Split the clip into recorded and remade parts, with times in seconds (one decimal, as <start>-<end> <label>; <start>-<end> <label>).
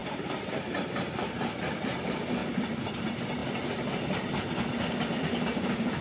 0.0-0.9 remade; 0.9-2.4 recorded; 2.4-2.9 remade; 2.9-6.0 recorded